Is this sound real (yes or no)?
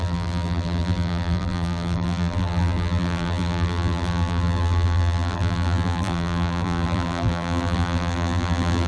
no